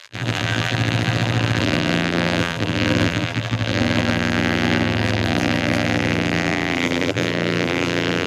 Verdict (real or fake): fake